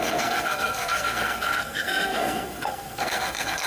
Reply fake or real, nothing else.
fake